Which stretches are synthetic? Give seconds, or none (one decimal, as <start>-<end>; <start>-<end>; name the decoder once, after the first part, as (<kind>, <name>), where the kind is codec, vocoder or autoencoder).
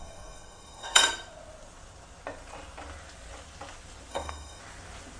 0.0-1.0 (codec, SNAC); 4.1-4.6